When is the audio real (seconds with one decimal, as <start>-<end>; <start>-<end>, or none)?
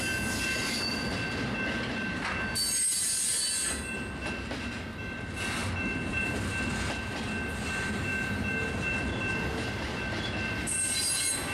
0.0-11.5